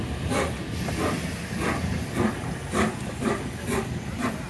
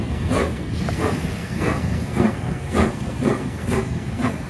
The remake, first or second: second